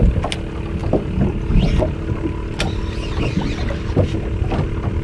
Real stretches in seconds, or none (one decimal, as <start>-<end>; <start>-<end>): 0.0-5.0